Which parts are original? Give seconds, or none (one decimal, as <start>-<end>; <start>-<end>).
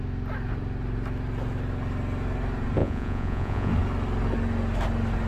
0.0-2.8; 3.7-5.3